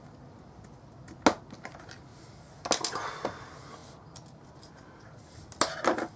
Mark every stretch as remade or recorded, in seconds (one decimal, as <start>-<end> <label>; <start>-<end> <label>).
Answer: 0.0-6.2 recorded